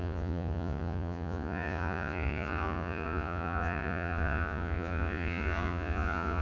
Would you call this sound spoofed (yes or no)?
yes